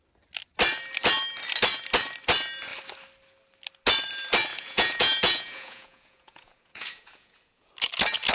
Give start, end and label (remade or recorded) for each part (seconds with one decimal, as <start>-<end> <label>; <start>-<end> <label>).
0.0-4.5 recorded; 4.5-7.7 remade; 7.7-8.3 recorded